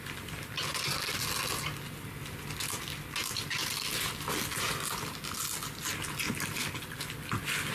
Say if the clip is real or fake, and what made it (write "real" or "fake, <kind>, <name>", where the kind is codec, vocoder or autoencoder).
real